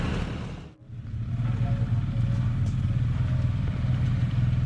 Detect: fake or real real